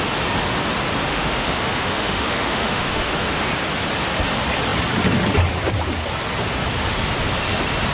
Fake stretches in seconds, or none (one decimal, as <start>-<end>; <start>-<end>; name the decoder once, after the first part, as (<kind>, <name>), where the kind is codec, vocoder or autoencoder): 1.1-3.5 (autoencoder, DAC-VAE)